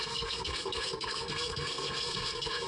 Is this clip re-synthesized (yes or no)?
yes